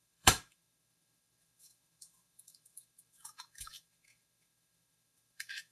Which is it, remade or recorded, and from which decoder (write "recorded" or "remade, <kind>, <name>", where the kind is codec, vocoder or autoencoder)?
remade, autoencoder, DAC-VAE